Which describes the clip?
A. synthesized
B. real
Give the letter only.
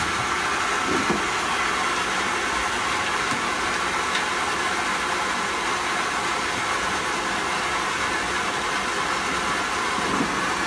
B